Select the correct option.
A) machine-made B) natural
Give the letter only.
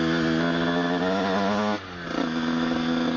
B